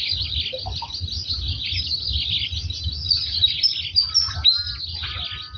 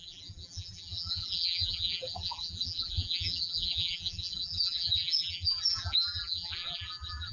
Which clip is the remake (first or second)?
second